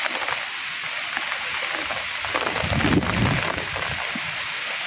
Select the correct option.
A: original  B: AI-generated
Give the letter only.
A